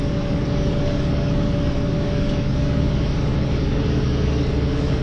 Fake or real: fake